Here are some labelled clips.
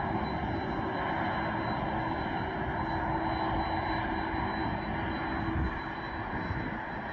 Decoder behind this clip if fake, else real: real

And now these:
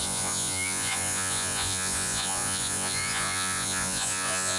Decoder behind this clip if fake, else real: fake, vocoder, Vocos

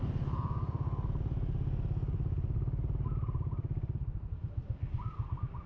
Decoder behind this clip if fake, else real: real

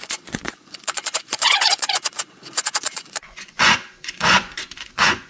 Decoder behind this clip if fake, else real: fake, vocoder, Vocos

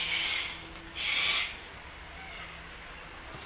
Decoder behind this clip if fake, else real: real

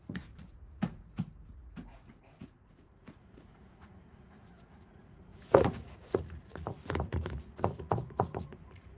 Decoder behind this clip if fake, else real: fake, vocoder, Vocos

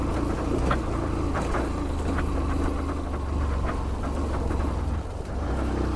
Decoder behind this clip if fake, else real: real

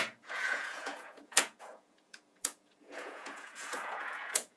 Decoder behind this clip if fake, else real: fake, vocoder, Vocos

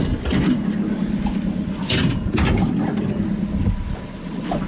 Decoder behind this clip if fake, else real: real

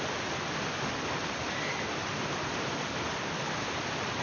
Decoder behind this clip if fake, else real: real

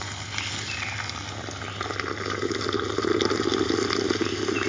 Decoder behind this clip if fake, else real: real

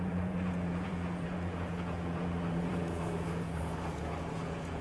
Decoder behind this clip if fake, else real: fake, vocoder, Vocos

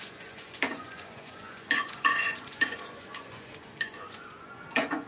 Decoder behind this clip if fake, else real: fake, vocoder, Vocos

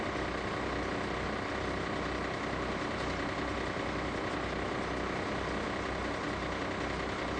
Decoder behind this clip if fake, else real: real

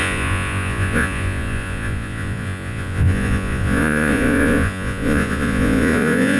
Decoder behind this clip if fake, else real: fake, vocoder, Vocos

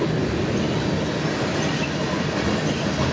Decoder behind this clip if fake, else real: real